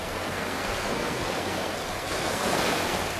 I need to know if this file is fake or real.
fake